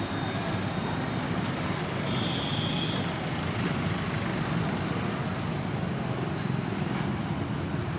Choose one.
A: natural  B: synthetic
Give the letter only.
A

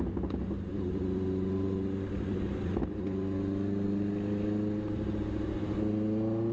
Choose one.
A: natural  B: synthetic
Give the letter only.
A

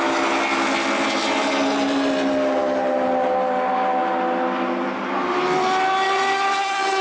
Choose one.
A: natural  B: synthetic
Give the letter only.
A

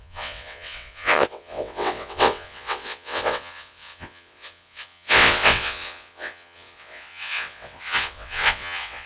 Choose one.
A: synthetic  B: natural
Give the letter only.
A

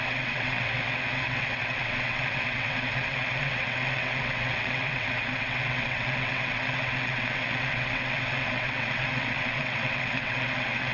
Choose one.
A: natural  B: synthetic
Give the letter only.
B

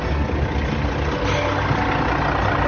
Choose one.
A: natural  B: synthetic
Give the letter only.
A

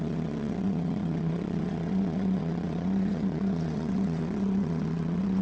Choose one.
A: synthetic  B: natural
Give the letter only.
A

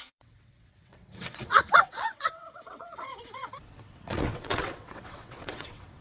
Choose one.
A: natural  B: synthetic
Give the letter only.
B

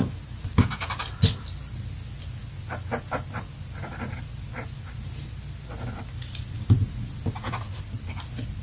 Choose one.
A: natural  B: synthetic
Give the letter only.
A